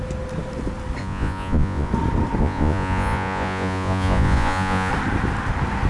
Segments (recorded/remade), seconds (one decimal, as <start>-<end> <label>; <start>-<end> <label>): 0.0-1.0 recorded; 1.0-1.9 remade; 1.9-2.4 recorded; 2.4-4.9 remade; 4.9-5.9 recorded